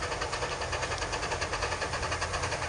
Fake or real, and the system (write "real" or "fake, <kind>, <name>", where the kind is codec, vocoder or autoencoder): real